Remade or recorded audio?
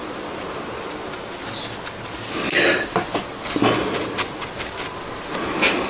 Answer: recorded